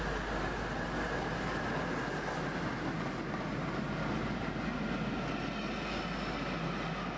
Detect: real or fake real